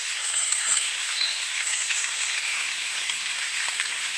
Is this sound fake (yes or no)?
yes